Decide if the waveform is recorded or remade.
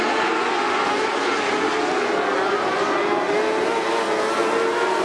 recorded